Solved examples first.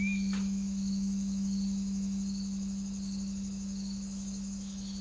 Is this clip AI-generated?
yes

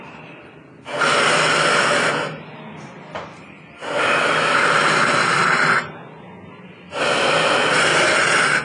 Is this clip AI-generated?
no